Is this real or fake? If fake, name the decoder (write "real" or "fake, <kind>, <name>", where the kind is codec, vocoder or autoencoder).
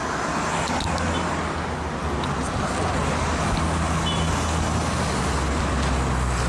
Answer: real